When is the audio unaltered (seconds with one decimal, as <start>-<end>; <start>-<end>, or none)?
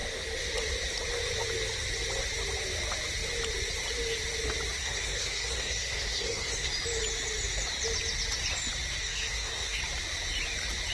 0.0-4.8; 6.7-9.0; 9.8-10.9